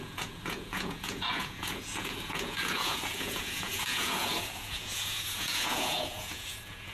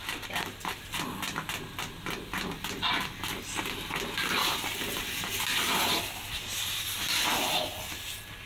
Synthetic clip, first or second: first